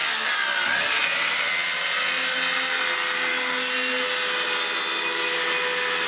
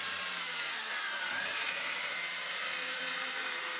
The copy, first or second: second